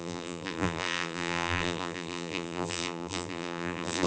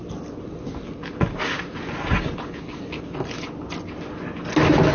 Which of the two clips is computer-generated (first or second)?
first